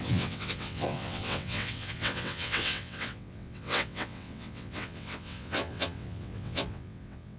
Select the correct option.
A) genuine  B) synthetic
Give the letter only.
B